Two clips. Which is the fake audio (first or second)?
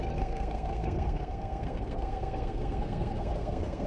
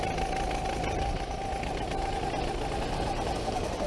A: first